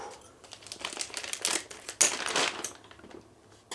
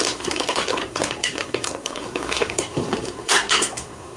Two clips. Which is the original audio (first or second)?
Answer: first